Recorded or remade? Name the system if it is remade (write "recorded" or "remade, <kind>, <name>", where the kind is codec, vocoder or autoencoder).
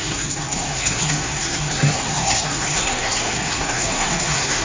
remade, codec, SNAC